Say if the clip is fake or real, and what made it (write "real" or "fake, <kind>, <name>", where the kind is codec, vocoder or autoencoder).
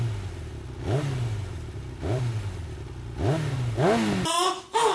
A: real